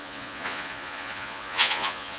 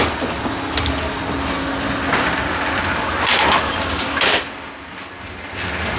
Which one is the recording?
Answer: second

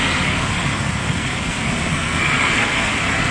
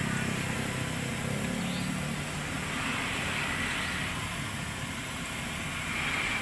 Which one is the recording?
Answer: second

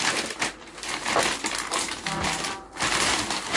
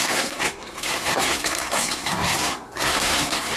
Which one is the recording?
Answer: first